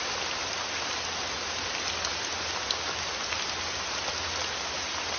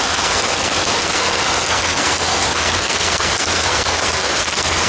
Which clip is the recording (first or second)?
first